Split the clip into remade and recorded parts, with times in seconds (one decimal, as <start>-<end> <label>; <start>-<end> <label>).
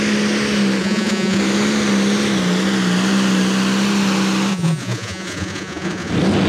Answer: 0.0-0.8 recorded; 0.8-1.4 remade; 1.4-4.5 recorded; 4.5-6.1 remade; 6.1-6.5 recorded